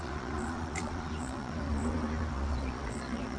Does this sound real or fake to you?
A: fake